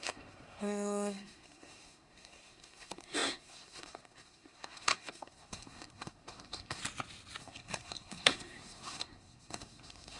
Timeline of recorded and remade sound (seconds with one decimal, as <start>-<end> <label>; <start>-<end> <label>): 0.0-6.8 remade; 6.8-7.4 recorded; 7.4-10.2 remade